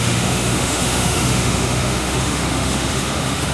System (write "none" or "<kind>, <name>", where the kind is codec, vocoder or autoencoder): autoencoder, DAC-VAE